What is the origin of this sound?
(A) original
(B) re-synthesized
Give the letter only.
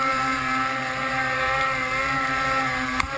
B